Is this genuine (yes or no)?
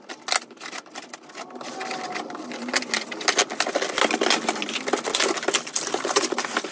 yes